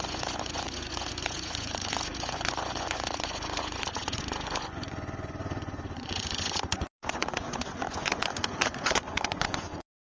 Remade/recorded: remade